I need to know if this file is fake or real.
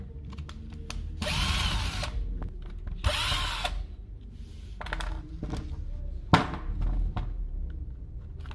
real